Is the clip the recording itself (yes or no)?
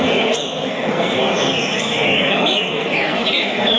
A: no